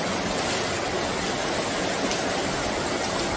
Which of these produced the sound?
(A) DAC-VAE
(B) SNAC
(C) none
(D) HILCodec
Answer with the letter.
C